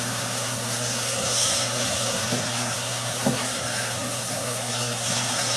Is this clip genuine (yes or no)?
no